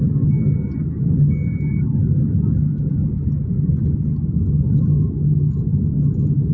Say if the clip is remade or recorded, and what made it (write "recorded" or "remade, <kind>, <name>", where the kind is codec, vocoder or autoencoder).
recorded